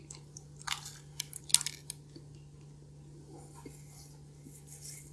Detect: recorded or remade recorded